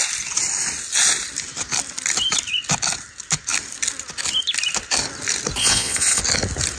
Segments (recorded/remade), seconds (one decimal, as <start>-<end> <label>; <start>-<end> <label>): 0.0-5.6 recorded; 5.6-6.2 remade; 6.2-6.8 recorded